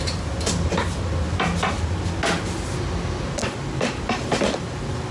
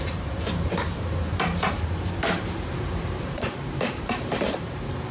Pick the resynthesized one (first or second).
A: second